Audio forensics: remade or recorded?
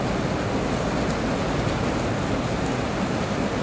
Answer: recorded